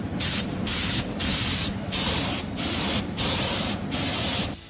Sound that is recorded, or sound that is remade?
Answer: remade